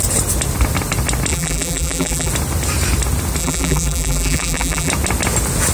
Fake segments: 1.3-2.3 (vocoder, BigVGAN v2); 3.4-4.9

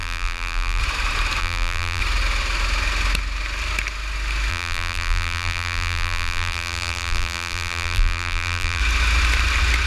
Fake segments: 0.0-0.8 (vocoder, BigVGAN v2); 1.4-2.0; 4.5-8.8

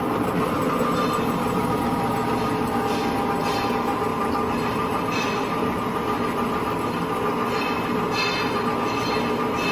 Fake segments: none

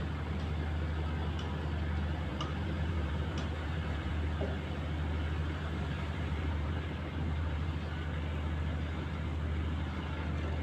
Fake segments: 2.3-4.1 (vocoder, BigVGAN v2); 5.4-7.7

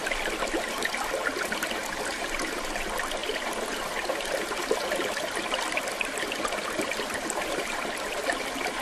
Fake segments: none

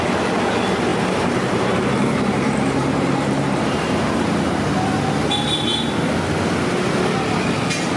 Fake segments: 0.9-4.3 (vocoder, BigVGAN v2)